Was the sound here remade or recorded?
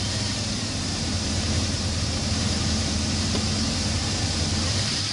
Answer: remade